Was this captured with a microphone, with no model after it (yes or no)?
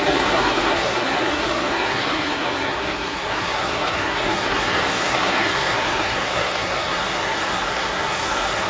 no